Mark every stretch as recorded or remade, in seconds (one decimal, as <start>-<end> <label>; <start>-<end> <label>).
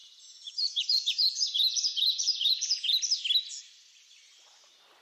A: 0.0-3.0 remade; 3.0-5.0 recorded